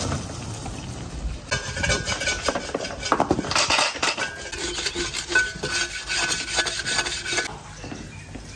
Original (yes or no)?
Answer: yes